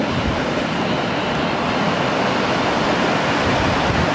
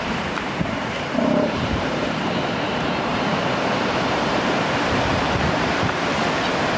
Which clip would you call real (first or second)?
first